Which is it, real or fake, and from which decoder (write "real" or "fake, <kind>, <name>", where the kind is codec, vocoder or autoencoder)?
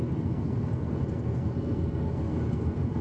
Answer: fake, codec, SNAC